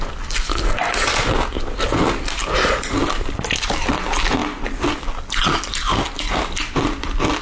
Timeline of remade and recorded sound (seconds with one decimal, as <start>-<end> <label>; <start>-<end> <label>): 0.0-3.0 recorded; 3.0-3.8 remade; 3.8-7.4 recorded